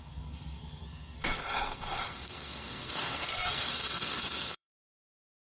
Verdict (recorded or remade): remade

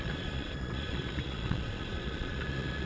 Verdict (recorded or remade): remade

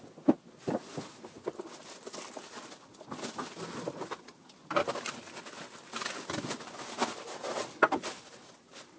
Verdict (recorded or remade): recorded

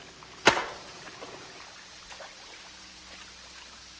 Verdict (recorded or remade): recorded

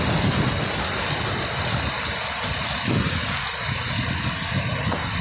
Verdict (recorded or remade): recorded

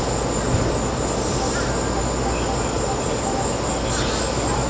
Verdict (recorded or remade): recorded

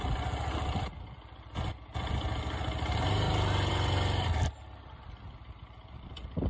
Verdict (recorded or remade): recorded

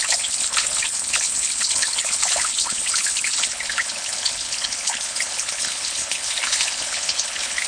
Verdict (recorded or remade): remade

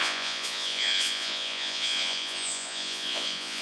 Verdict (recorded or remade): remade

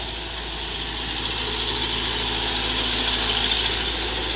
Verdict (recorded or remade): recorded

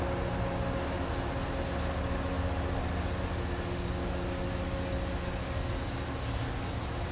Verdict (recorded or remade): recorded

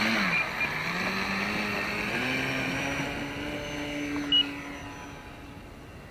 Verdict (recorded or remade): recorded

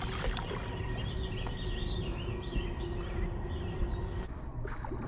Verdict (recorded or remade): recorded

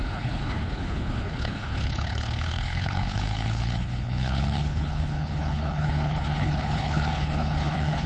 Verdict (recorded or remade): remade